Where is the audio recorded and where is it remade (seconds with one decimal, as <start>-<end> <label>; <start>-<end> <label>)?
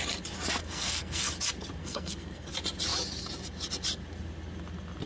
0.0-0.6 recorded; 0.6-1.3 remade; 1.3-1.8 recorded; 1.8-2.5 remade; 2.5-5.1 recorded